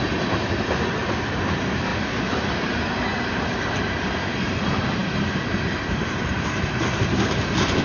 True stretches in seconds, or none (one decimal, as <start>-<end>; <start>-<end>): 3.1-4.4